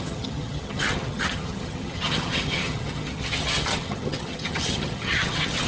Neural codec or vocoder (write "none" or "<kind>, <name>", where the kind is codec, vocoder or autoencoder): vocoder, HiFi-GAN